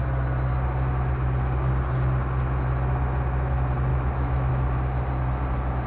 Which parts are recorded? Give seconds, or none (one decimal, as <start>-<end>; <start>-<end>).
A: 0.0-3.9; 4.5-5.9